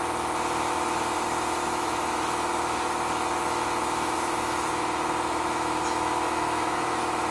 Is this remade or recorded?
remade